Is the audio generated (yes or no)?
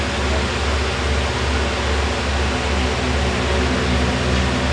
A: no